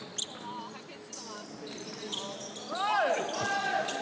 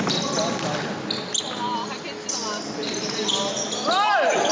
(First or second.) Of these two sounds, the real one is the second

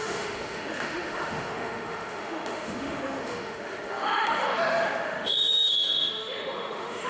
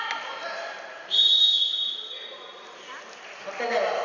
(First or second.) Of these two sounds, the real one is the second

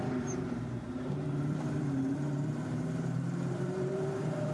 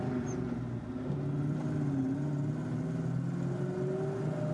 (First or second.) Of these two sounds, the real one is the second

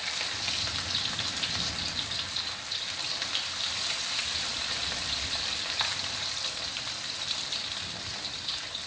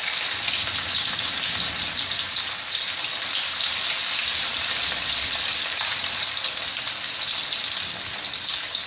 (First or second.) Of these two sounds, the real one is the second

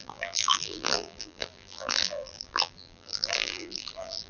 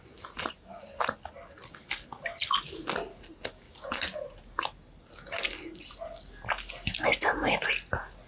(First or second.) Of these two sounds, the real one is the second